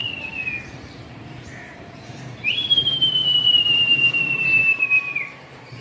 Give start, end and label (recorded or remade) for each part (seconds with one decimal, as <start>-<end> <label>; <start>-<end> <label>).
0.0-0.8 recorded; 0.8-5.8 remade